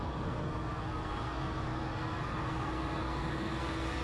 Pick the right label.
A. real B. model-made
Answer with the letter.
B